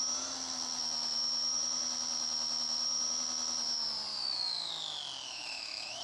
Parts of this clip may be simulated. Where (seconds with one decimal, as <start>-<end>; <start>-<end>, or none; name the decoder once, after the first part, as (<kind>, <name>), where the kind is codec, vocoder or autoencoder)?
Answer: 4.1-4.7 (autoencoder, DAC-VAE); 5.2-6.0